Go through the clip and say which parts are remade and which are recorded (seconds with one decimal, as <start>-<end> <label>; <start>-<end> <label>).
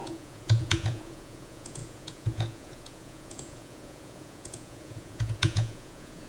0.0-6.3 remade